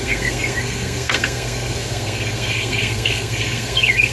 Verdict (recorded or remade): remade